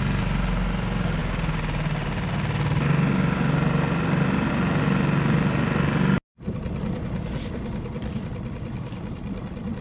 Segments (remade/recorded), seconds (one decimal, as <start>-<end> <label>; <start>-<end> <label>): 0.0-9.8 recorded